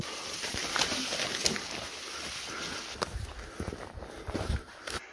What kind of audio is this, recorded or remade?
recorded